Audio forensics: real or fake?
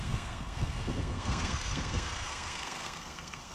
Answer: fake